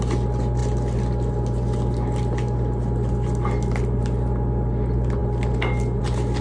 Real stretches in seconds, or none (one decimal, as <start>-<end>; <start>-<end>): 0.0-6.4